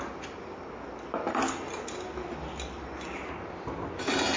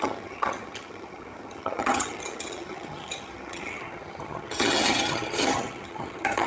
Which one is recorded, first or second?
first